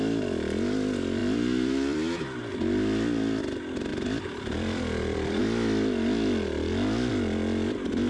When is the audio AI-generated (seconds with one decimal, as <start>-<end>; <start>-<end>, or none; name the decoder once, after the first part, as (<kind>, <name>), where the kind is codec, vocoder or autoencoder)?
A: 1.2-2.5 (vocoder, BigVGAN v2); 3.9-5.4